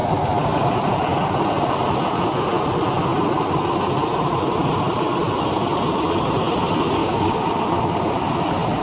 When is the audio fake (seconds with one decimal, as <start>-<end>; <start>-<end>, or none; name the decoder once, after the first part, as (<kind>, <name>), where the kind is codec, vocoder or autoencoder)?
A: 7.0-7.5 (codec, DAC)